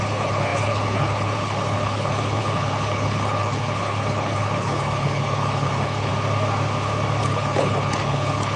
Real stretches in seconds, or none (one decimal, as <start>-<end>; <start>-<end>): 6.1-7.2